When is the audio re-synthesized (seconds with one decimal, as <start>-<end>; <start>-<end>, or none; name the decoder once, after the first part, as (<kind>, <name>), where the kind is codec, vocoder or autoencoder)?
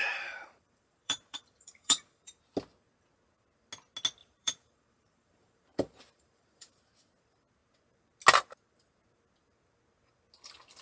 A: 0.0-2.4 (vocoder, BigVGAN v2); 4.2-6.8